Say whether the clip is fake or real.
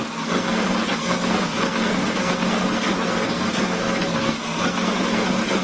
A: fake